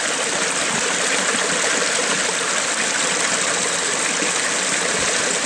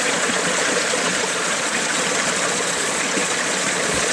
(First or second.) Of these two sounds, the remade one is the second